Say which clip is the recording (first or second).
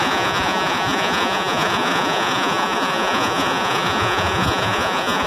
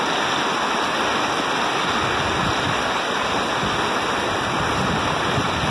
second